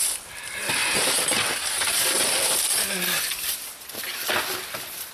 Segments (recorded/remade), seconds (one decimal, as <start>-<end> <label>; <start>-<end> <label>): 0.0-5.1 recorded